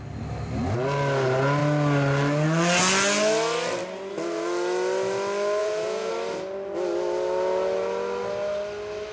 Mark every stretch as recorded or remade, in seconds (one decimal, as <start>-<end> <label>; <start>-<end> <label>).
0.0-5.6 recorded; 5.6-6.1 remade; 6.1-9.1 recorded